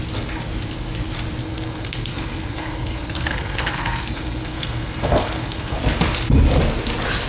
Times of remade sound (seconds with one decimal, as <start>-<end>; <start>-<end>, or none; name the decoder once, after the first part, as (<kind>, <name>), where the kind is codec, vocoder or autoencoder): 1.4-5.8 (codec, SNAC)